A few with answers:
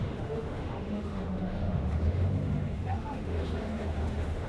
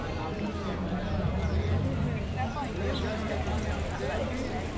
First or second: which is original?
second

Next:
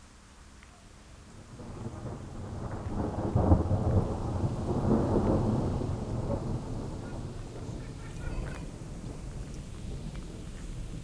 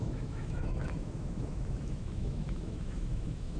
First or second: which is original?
first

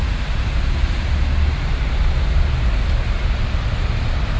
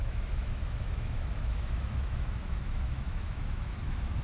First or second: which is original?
first